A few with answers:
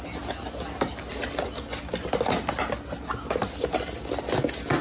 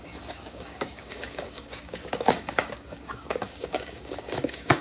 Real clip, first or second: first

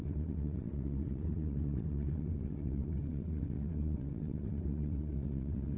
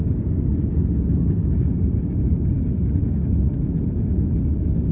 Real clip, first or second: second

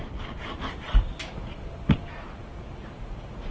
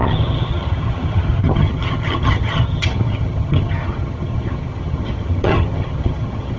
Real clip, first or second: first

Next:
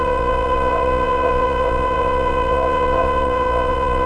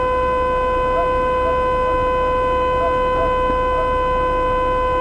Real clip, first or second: second